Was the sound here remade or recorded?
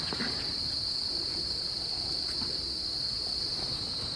recorded